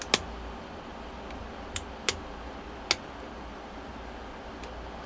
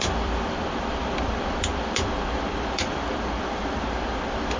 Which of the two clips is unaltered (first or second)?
first